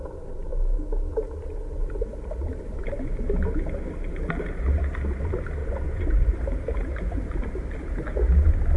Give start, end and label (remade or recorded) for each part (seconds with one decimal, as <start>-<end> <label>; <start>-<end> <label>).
0.0-5.6 recorded; 5.6-6.4 remade; 6.4-8.8 recorded